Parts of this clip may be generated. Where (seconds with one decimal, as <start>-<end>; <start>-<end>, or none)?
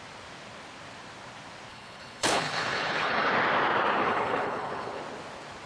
1.7-3.3; 4.0-5.0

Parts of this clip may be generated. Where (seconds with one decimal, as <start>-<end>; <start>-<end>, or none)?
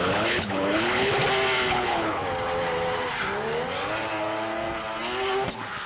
0.0-1.2; 1.7-2.2